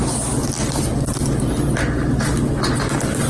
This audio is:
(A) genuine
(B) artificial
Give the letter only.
A